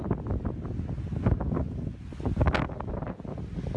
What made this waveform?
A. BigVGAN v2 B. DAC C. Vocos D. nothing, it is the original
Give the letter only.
D